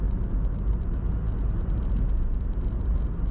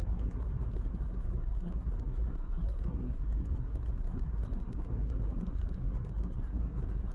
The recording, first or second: first